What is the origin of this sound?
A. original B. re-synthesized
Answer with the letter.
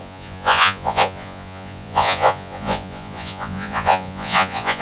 B